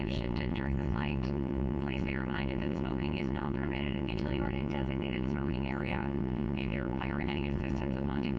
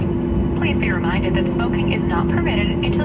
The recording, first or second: second